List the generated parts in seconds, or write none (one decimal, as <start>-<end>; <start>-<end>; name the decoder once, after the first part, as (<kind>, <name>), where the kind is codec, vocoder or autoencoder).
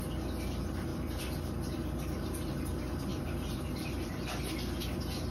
0.9-2.6 (vocoder, BigVGAN v2); 3.1-4.2